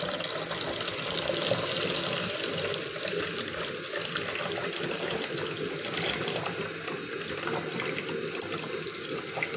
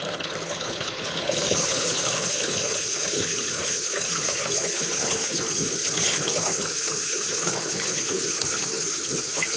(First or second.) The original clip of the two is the first